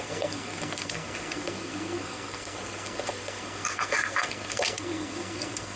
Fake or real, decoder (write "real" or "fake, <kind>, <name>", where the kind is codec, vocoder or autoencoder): fake, codec, SNAC